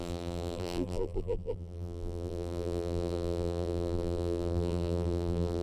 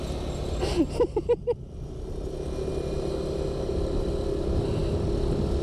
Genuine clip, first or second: second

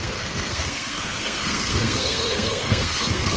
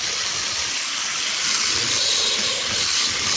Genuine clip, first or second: second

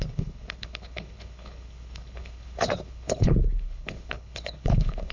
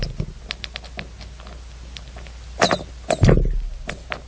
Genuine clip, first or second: second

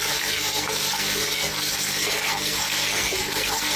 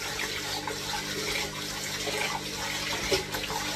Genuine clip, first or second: second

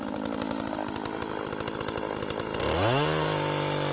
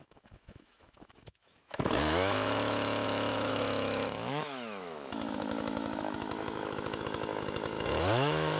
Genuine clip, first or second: first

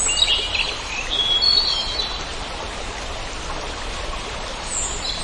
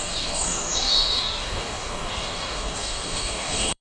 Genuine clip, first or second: first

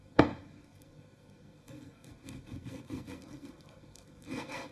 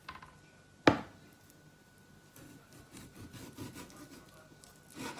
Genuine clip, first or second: second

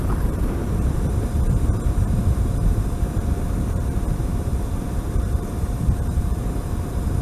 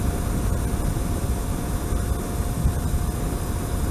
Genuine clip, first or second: second